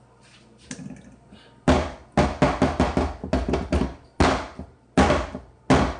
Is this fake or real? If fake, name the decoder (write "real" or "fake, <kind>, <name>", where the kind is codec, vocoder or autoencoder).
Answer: real